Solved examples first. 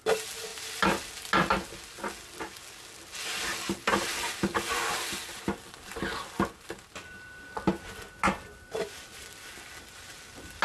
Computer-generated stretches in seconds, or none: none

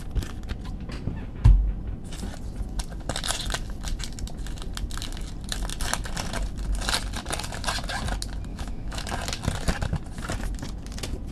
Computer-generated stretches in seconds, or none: 8.5-9.0 (autoencoder, DAC-VAE)

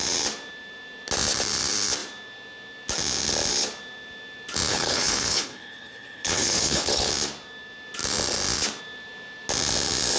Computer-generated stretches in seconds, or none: 4.7-7.1 (codec, HILCodec)

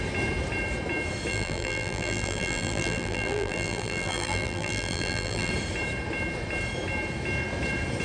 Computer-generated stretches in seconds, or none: 1.3-5.5 (vocoder, BigVGAN v2)

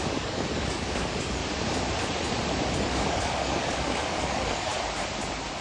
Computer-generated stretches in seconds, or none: 0.0-1.4 (codec, DAC); 2.8-4.7

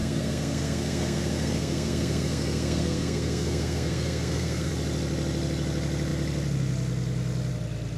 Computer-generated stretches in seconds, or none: 0.0-4.7 (codec, SNAC)

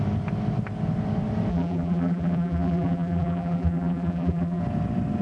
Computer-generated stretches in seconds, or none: 1.5-4.6 (vocoder, BigVGAN v2)

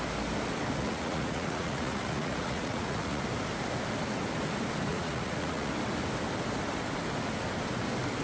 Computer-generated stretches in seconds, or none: 0.8-3.2 (vocoder, Vocos); 4.9-5.7